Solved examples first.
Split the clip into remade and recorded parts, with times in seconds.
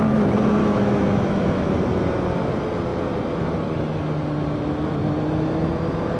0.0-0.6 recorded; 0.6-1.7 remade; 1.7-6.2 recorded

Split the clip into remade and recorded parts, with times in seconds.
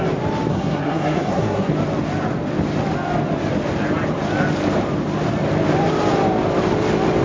0.0-0.5 recorded; 0.5-1.7 remade; 1.7-7.2 recorded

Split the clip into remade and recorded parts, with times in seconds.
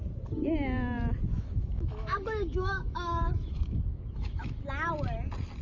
0.0-1.3 recorded; 1.3-4.7 remade; 4.7-5.6 recorded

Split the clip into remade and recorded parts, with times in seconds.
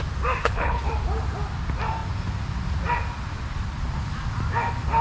0.0-0.4 recorded; 0.4-0.9 remade; 0.9-5.0 recorded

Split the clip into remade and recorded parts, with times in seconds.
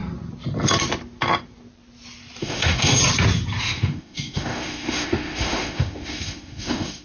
0.0-2.4 recorded; 2.4-3.0 remade; 3.0-3.6 recorded; 3.6-7.0 remade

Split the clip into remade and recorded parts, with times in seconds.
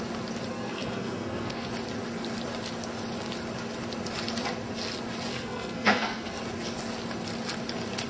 0.0-0.5 recorded; 0.5-1.7 remade; 1.7-5.3 recorded; 5.3-6.4 remade; 6.4-8.1 recorded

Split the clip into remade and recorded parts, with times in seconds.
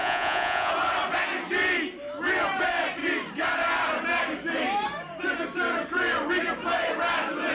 0.0-0.7 remade; 0.7-7.5 recorded